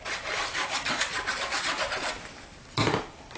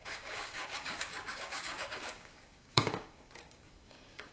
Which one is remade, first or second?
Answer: second